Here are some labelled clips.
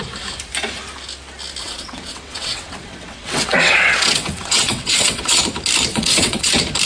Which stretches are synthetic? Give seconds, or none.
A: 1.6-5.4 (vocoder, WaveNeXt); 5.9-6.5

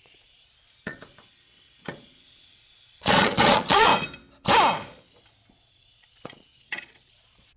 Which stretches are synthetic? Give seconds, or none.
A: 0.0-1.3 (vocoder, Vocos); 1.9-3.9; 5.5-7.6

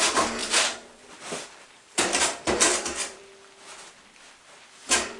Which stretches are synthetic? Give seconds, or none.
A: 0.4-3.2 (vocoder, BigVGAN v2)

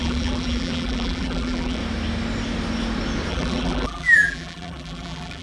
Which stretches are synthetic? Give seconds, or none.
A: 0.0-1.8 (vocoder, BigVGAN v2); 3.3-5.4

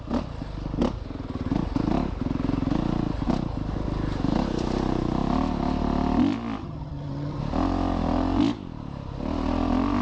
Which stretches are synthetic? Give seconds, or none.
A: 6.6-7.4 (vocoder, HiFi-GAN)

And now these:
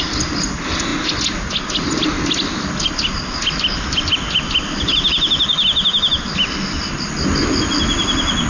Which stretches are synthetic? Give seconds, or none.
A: none

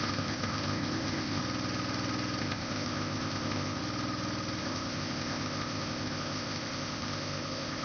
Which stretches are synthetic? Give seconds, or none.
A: 0.0-1.4 (codec, ZipCodec); 2.4-3.8; 4.6-7.8